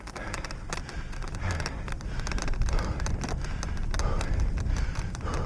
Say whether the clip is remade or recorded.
recorded